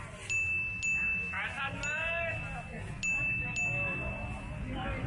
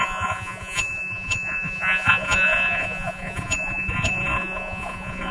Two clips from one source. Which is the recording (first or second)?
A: first